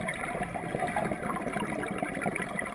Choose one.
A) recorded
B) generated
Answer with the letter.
A